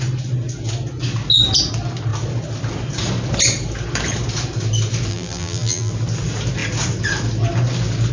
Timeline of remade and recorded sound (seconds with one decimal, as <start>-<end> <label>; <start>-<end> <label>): 0.0-5.1 recorded; 5.1-5.9 remade; 5.9-8.1 recorded